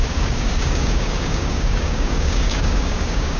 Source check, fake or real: fake